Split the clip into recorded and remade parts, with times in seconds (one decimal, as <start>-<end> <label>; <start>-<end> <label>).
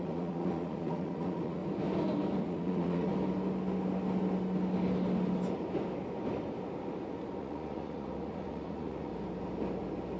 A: 0.0-1.6 remade; 1.6-2.4 recorded; 2.4-3.1 remade; 3.1-7.4 recorded; 7.4-9.1 remade; 9.1-10.2 recorded